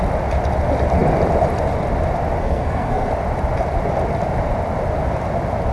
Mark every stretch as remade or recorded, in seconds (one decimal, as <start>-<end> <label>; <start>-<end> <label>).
0.0-2.4 recorded; 2.4-3.1 remade; 3.1-5.7 recorded